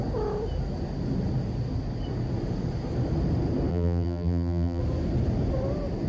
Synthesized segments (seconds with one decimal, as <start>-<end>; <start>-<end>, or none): 3.7-4.8